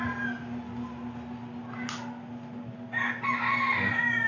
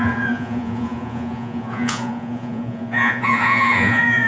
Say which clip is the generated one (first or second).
second